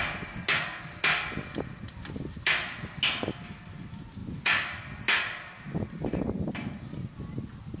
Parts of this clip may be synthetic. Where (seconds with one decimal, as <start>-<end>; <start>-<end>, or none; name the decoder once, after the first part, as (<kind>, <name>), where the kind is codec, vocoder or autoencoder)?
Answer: none